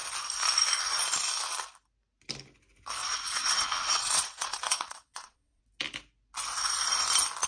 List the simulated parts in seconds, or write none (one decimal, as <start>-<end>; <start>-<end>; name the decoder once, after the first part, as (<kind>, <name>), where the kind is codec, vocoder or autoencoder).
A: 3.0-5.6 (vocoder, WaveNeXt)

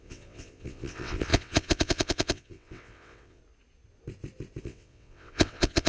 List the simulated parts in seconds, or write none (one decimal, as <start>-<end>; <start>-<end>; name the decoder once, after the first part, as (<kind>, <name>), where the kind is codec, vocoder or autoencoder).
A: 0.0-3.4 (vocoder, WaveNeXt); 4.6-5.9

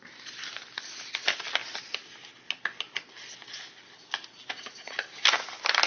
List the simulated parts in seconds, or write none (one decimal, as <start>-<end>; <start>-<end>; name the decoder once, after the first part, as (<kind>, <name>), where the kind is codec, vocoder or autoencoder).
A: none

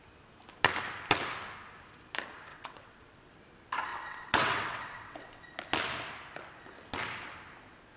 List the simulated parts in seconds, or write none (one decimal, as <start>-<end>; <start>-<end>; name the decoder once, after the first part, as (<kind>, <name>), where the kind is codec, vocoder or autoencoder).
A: 2.5-3.3 (vocoder, WaveNeXt); 3.9-5.4